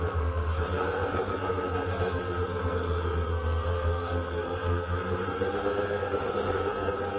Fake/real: fake